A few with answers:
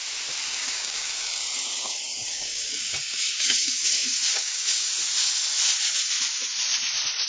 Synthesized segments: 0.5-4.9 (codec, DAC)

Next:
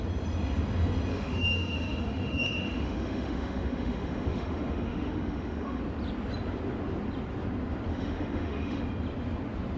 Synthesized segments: 1.1-5.8 (autoencoder, DAC-VAE); 7.9-8.8

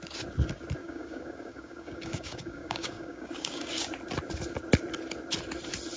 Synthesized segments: 0.8-3.8 (codec, DAC)

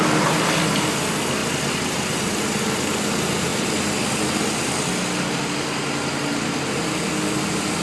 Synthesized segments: none